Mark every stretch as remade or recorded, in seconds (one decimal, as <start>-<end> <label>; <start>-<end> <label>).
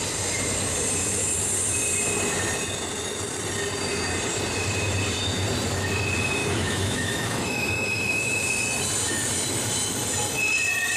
0.0-6.4 recorded; 6.4-8.5 remade; 8.5-11.0 recorded